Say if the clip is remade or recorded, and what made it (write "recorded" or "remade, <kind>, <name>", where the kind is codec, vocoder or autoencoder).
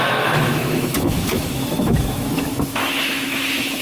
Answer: remade, autoencoder, DAC-VAE